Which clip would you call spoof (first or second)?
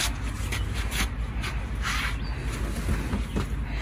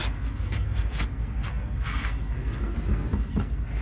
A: second